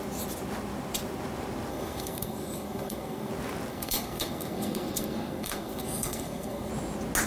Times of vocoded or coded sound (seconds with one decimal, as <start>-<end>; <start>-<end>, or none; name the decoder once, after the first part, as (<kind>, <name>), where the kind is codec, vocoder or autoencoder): 1.7-3.3 (codec, SNAC); 3.7-6.7